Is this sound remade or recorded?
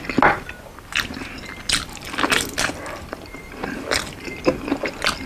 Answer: recorded